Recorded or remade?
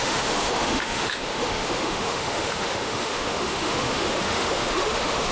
remade